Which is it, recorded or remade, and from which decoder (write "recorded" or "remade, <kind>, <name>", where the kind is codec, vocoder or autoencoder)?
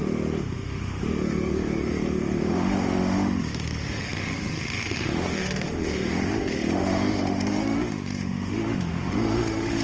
remade, autoencoder, DAC-VAE